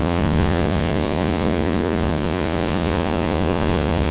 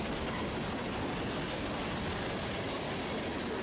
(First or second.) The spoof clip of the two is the first